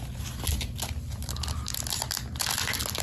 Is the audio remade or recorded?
recorded